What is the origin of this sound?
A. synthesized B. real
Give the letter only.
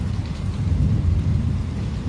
A